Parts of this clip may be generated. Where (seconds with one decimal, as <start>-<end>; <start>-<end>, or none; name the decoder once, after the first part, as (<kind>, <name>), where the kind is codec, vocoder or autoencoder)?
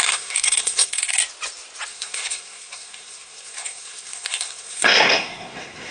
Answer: 0.0-1.2 (codec, SNAC); 1.9-5.9